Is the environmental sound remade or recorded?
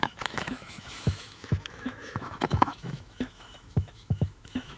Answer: remade